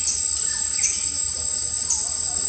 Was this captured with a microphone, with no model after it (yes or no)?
yes